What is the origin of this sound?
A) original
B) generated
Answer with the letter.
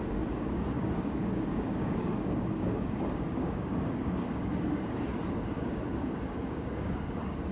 B